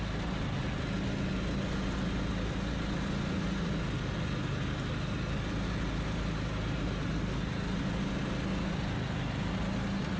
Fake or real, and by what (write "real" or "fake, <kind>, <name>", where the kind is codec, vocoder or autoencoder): real